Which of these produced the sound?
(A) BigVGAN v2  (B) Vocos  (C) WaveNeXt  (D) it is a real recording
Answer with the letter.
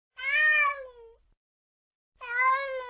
D